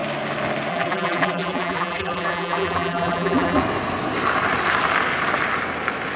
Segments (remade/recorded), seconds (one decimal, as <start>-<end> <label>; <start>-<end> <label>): 0.0-0.7 recorded; 0.7-3.6 remade; 3.6-6.2 recorded